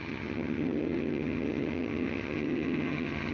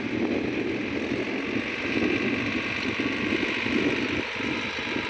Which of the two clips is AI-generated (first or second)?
first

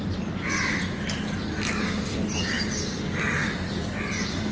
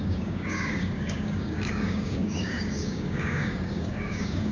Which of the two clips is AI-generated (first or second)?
second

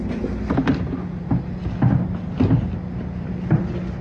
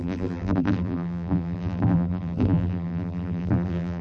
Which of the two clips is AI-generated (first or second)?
second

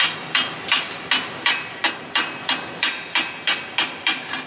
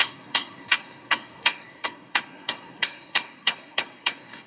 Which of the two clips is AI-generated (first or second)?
second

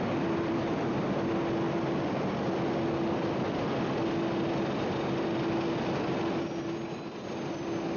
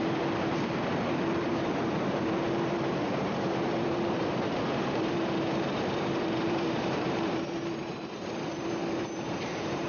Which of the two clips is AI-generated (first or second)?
second